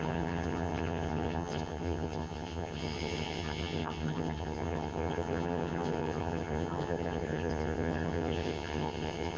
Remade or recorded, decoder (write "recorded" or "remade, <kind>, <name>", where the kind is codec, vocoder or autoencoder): remade, vocoder, HiFi-GAN